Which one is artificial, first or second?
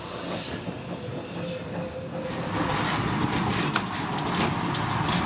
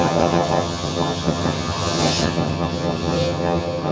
second